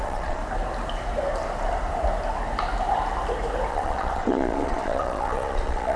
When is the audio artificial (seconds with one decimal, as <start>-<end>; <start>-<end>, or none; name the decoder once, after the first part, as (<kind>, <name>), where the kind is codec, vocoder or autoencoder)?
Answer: 0.0-0.4 (vocoder, Vocos); 3.7-6.0